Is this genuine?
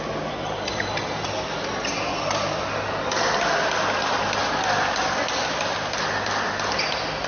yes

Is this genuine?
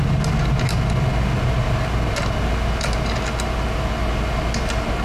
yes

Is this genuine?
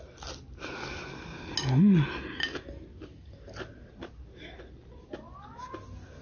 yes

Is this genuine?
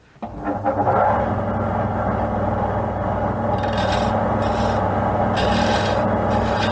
yes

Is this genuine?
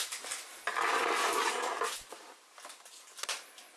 yes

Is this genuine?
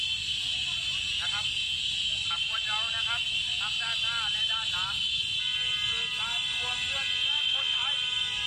yes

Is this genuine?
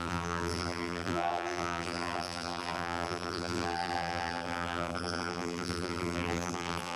no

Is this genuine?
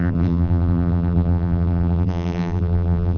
no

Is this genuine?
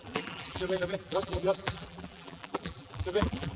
no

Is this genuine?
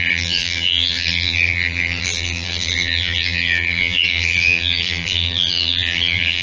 no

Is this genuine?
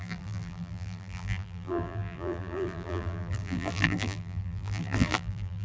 no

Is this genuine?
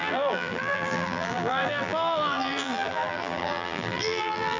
no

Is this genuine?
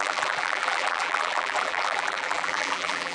no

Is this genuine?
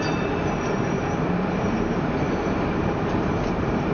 no